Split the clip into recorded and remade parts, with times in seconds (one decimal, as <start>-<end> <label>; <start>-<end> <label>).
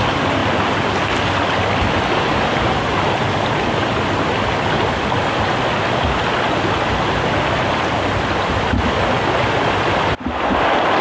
0.0-11.0 recorded